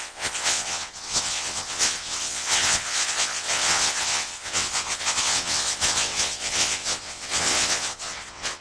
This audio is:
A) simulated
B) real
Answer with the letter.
A